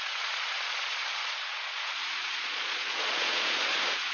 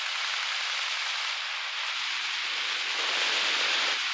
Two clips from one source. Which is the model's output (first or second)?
first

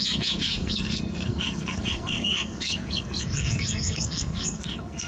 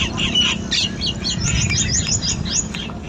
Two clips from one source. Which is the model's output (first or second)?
first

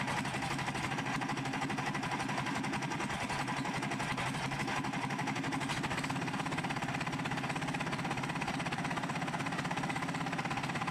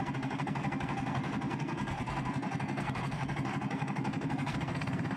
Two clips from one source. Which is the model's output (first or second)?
second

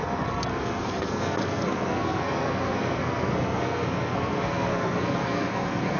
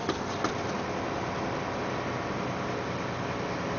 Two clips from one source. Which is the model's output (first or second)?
first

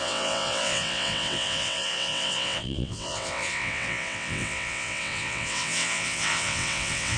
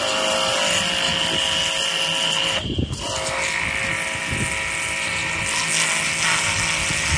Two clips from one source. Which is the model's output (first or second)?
first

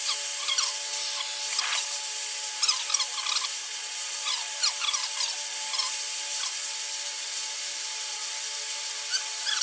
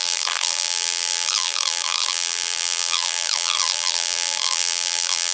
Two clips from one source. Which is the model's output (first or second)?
second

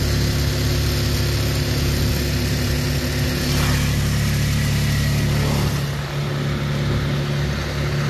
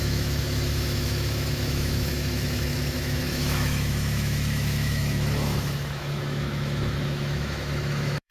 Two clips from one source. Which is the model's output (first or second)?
second